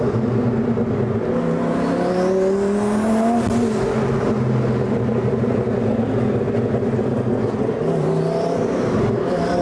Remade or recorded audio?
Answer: recorded